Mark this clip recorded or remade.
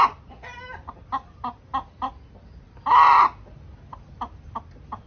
recorded